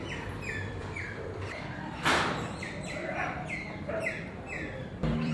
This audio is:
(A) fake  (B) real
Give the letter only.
A